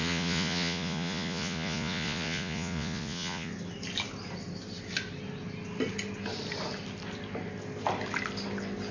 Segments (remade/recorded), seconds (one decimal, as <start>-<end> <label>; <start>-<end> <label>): 0.0-3.5 remade; 3.5-8.9 recorded